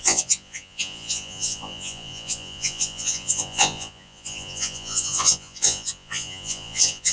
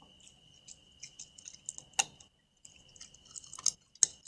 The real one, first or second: second